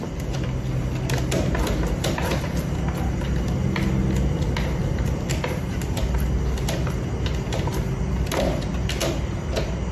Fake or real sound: real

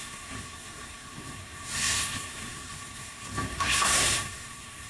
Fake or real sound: fake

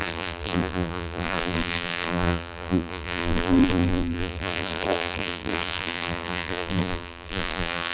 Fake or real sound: fake